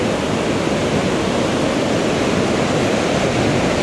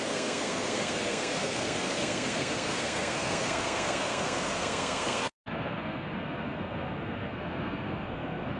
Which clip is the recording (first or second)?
first